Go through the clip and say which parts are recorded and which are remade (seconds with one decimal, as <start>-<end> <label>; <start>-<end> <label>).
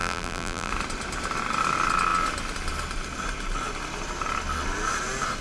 0.0-0.7 remade; 0.7-5.4 recorded